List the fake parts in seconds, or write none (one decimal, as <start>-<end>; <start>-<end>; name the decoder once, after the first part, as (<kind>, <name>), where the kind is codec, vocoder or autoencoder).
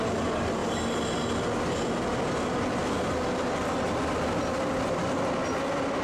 none